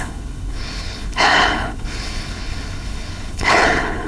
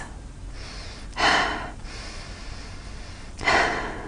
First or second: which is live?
second